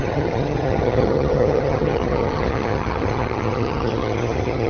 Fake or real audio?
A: fake